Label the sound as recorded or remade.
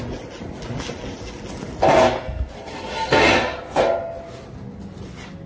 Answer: recorded